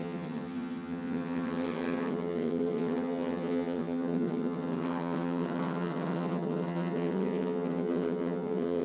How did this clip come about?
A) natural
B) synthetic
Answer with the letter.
B